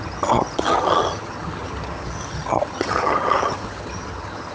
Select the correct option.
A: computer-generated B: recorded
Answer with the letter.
A